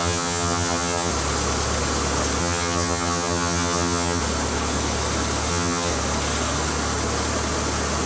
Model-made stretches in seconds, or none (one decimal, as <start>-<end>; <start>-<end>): 0.0-1.1; 2.4-4.2; 5.5-5.9